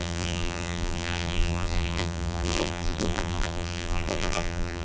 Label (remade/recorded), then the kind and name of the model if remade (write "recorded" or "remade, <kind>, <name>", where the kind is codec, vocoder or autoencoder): remade, vocoder, BigVGAN v2